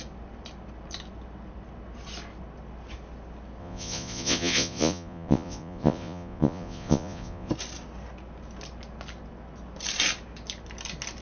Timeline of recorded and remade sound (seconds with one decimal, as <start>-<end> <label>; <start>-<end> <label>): 0.0-3.6 recorded; 3.6-7.5 remade; 7.5-11.2 recorded